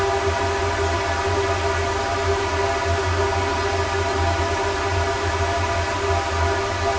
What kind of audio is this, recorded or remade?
recorded